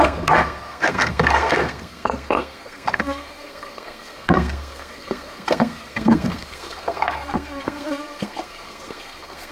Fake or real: fake